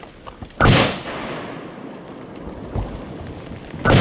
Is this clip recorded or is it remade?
recorded